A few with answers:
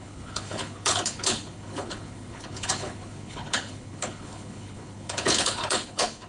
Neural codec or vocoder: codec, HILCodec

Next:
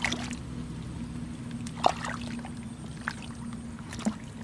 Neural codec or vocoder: none